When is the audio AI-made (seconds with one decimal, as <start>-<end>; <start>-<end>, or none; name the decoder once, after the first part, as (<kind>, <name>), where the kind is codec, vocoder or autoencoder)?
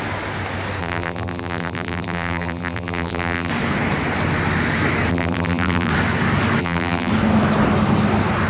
0.8-3.5 (vocoder, BigVGAN v2); 5.1-5.9; 6.6-7.1